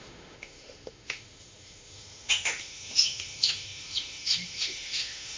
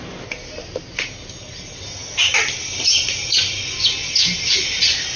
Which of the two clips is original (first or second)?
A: second